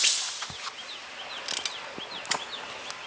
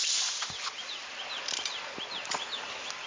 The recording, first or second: first